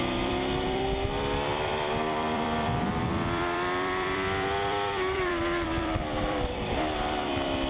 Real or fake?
fake